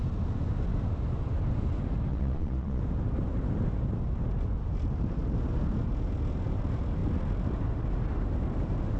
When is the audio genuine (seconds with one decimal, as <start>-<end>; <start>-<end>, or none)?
0.0-2.1; 2.8-9.0